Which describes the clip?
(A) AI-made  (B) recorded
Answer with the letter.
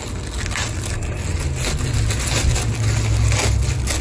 B